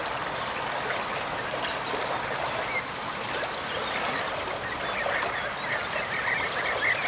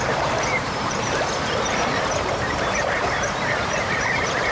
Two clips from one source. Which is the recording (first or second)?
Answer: first